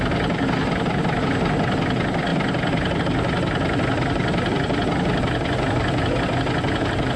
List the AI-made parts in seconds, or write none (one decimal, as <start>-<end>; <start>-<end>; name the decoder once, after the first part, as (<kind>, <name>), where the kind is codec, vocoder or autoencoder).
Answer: none